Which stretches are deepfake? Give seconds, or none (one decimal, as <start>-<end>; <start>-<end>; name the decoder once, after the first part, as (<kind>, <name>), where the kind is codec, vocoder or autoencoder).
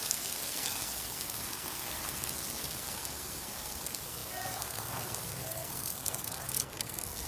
0.0-7.3 (codec, SNAC)